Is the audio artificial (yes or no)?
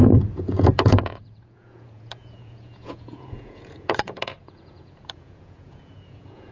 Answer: yes